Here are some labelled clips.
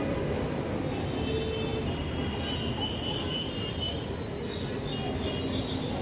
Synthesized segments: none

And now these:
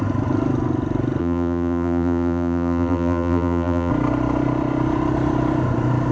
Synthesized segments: 1.2-3.9 (vocoder, BigVGAN v2)

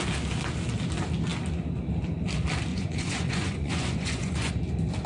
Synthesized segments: 2.7-4.5 (vocoder, Vocos)